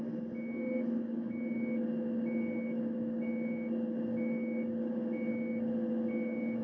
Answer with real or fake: fake